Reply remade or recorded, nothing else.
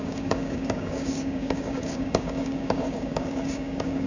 remade